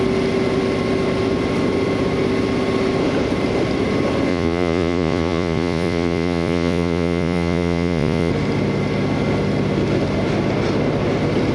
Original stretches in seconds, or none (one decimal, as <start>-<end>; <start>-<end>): 0.0-4.3; 8.3-11.5